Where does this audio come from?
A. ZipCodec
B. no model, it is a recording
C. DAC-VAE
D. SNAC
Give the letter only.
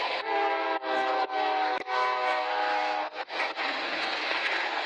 D